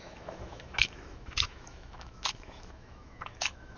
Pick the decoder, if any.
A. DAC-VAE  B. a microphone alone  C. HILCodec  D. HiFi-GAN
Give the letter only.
A